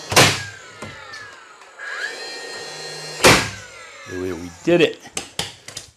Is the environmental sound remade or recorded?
recorded